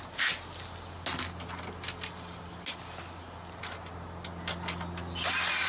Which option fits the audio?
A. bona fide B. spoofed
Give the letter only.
A